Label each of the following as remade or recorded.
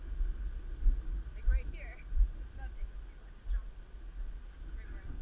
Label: recorded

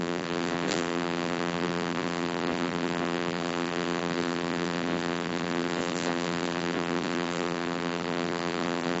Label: remade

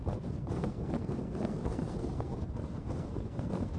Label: remade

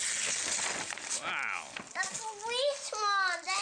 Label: recorded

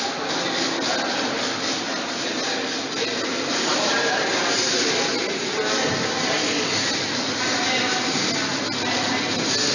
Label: recorded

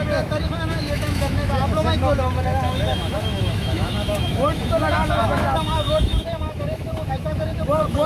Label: remade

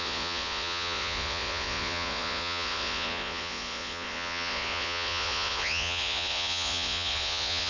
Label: remade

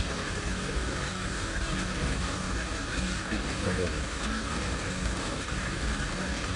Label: remade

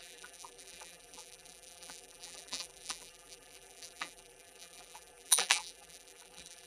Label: remade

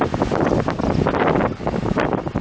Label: recorded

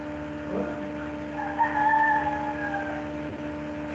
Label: recorded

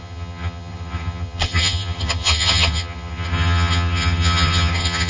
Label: remade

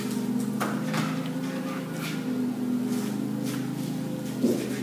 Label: recorded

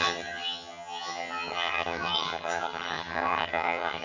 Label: remade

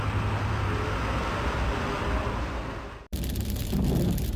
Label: recorded